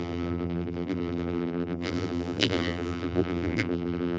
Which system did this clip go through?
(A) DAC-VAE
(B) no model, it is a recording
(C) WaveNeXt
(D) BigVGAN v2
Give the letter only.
D